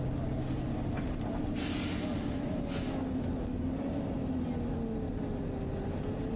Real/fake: real